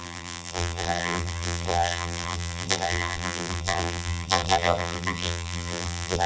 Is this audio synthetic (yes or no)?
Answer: yes